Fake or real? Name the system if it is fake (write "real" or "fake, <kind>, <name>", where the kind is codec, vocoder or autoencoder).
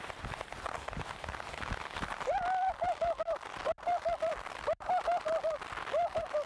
fake, vocoder, BigVGAN v2